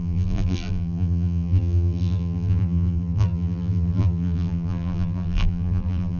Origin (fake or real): fake